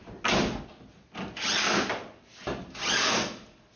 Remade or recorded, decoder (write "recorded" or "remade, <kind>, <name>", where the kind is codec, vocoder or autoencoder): recorded